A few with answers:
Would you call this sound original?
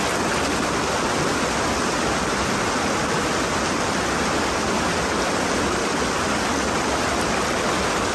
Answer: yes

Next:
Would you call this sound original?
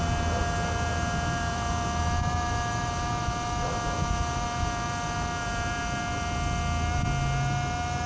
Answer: yes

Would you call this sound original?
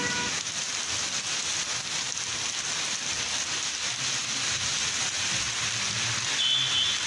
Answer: yes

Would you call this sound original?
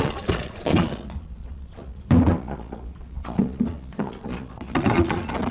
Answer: no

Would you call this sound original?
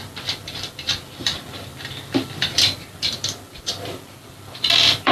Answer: no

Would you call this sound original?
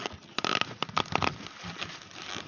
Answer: yes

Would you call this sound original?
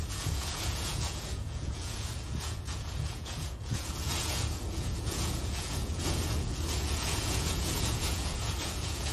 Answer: no